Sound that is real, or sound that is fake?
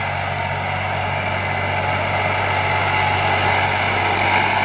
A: real